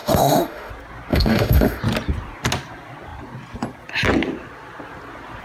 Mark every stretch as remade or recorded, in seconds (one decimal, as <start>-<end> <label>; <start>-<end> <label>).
0.0-0.7 remade; 0.7-1.1 recorded; 1.1-1.8 remade; 1.8-5.4 recorded